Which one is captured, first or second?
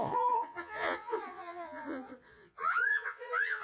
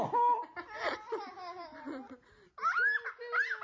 second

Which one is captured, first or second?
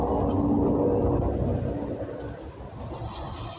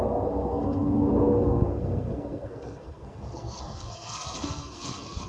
first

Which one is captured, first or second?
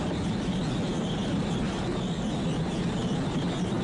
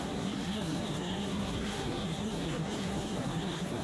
first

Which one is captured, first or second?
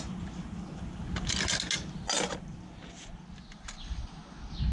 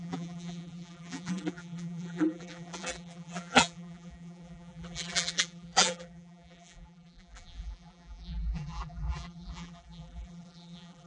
first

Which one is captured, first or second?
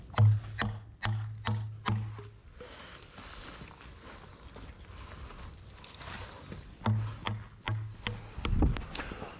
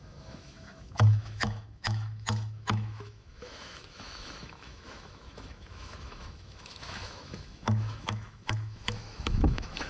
first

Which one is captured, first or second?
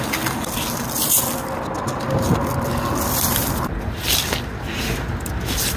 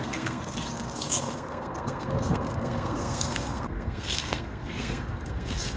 first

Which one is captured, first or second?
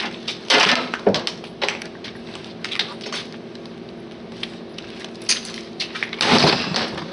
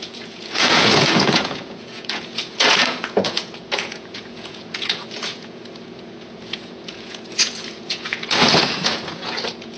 first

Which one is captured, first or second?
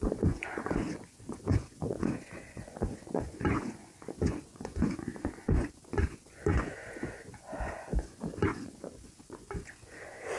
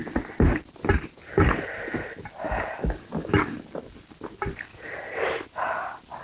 second